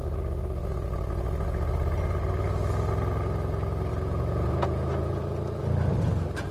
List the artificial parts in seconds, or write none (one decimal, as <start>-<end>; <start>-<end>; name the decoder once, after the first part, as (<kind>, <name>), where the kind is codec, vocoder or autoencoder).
3.9-5.6 (vocoder, Vocos)